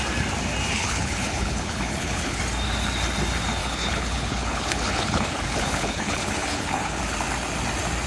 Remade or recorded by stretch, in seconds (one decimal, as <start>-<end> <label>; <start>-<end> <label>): 0.0-0.7 recorded; 0.7-2.4 remade; 2.4-3.6 recorded; 3.6-7.0 remade; 7.0-8.1 recorded

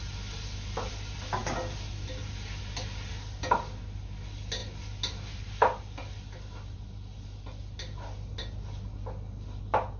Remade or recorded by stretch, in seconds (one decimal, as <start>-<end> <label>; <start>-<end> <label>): 0.0-10.0 recorded

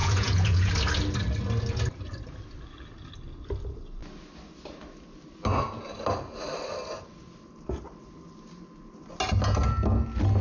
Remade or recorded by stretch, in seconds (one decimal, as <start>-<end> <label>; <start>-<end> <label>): 0.0-0.7 remade; 0.7-10.4 recorded